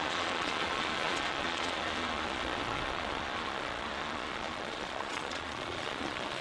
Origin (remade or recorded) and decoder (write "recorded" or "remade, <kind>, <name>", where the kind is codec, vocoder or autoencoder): remade, vocoder, Vocos